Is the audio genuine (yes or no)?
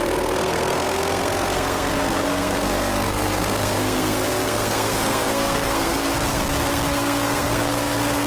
no